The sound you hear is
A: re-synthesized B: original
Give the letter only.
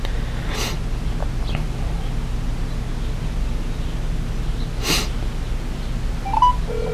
B